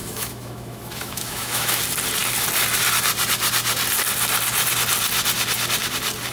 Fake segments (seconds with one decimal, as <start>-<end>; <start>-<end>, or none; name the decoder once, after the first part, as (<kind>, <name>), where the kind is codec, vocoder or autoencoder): 0.0-1.8 (autoencoder, DAC-VAE)